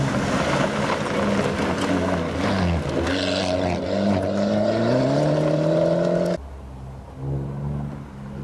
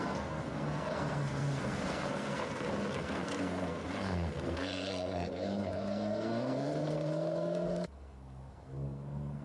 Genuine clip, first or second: first